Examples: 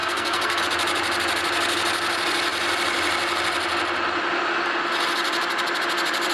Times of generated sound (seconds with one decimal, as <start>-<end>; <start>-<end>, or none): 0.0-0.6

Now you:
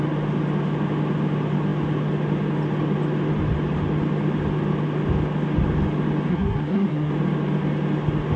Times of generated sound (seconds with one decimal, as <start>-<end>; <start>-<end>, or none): 6.3-7.1

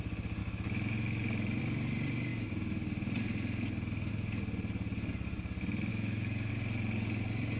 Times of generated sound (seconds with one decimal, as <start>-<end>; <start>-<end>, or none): 0.4-1.6; 5.9-6.5